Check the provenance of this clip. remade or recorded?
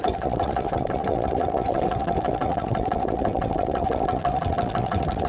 remade